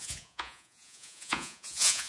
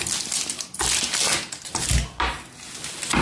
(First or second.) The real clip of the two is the second